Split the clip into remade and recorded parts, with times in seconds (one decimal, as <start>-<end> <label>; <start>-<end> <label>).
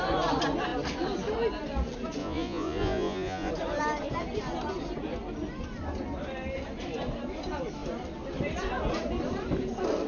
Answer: 0.0-2.2 recorded; 2.2-3.5 remade; 3.5-10.1 recorded